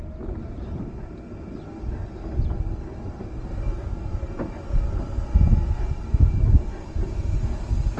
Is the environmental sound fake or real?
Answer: real